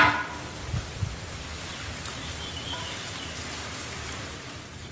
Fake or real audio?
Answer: real